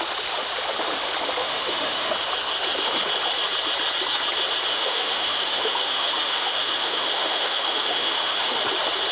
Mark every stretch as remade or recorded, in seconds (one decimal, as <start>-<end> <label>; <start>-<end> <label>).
0.0-1.4 recorded; 1.4-2.1 remade; 2.1-4.7 recorded; 4.7-8.6 remade; 8.6-9.1 recorded